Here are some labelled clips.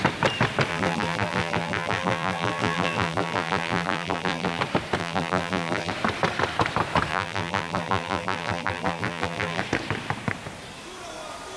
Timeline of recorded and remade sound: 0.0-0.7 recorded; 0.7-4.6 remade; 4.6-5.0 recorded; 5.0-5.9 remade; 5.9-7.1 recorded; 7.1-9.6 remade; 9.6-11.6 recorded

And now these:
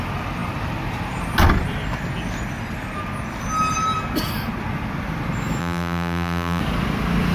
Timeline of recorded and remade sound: 0.0-5.6 recorded; 5.6-6.6 remade; 6.6-7.3 recorded

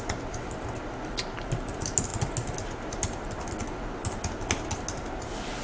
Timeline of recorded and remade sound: 0.0-5.6 recorded

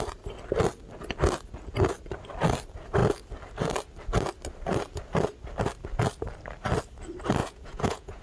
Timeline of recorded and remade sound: 0.0-7.4 recorded; 7.4-8.2 remade

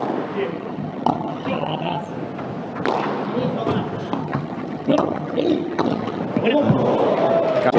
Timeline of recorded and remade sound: 0.0-0.5 recorded; 0.5-2.1 remade; 2.1-4.2 recorded; 4.2-6.2 remade; 6.2-7.8 recorded

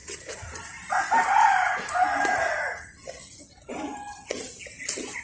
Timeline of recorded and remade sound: 0.0-5.2 recorded